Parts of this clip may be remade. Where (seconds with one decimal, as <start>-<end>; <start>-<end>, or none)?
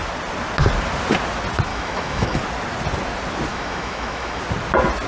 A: 1.7-2.4; 3.5-4.4